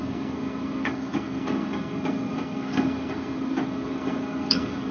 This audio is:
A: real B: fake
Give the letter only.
B